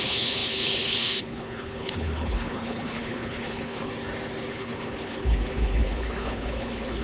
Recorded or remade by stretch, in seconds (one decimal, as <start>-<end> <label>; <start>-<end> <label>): 0.0-3.9 remade; 3.9-4.5 recorded; 4.5-7.0 remade